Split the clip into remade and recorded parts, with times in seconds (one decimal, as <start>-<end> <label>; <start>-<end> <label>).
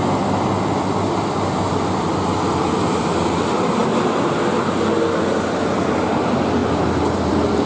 0.0-6.6 recorded; 6.6-7.7 remade